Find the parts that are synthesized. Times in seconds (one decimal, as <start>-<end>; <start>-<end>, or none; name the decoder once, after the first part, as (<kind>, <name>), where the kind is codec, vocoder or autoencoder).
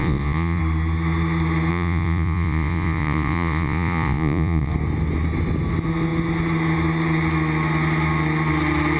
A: 0.0-0.6 (vocoder, Vocos); 1.7-4.7